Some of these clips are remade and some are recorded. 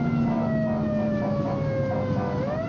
recorded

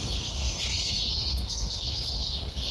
remade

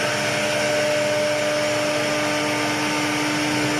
recorded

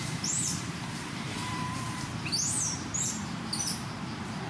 remade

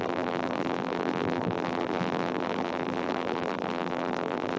remade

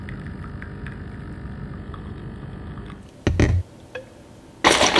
recorded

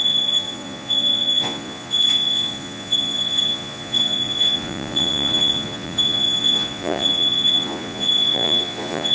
remade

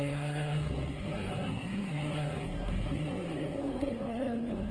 remade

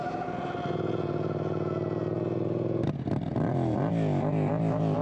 recorded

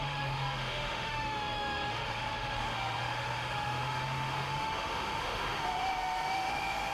remade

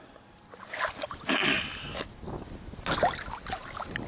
recorded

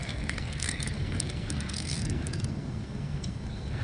remade